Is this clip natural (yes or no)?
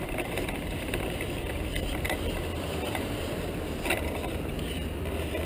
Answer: no